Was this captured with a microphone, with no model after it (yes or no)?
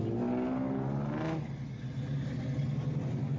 yes